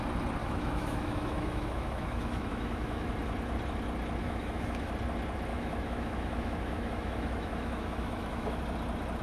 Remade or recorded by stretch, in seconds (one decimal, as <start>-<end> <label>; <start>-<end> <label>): 0.0-0.4 recorded; 0.4-3.1 remade; 3.1-4.2 recorded; 4.2-4.9 remade; 4.9-5.5 recorded; 5.5-8.6 remade; 8.6-9.2 recorded